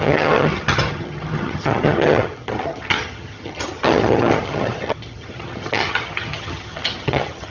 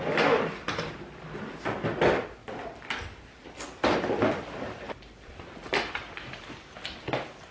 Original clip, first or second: second